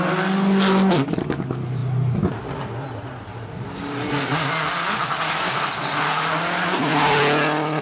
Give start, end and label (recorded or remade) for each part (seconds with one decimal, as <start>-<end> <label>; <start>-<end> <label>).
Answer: 0.0-7.8 recorded